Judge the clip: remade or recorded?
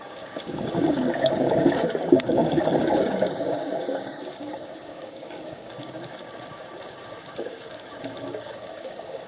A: remade